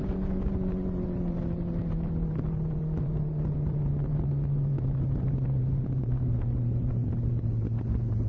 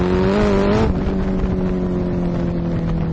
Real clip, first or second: second